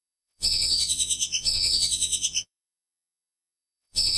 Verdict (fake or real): fake